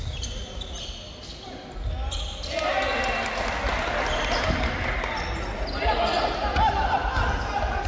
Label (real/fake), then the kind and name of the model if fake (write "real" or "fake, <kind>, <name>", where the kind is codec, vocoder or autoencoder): real